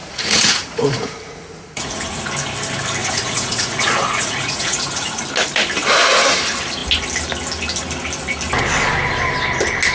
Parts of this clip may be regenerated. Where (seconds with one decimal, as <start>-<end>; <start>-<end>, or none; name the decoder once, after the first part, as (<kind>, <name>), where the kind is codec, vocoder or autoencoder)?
0.0-2.2 (vocoder, Vocos); 3.0-5.2